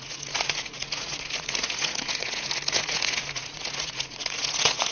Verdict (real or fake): fake